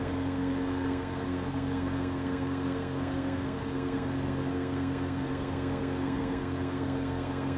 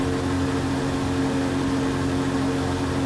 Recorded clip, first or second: second